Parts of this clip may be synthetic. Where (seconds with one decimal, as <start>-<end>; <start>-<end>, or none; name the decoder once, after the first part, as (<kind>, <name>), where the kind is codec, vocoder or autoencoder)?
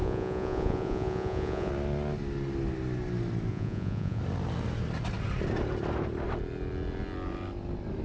0.0-1.7 (vocoder, Vocos); 3.5-4.2